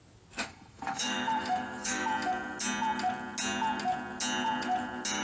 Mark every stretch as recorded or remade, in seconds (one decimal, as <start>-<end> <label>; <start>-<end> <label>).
0.0-0.4 recorded; 0.4-2.1 remade; 2.1-5.2 recorded